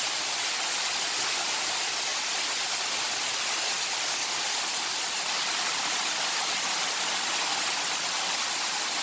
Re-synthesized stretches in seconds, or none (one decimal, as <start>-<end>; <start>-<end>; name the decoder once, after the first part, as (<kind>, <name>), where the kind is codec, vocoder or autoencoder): none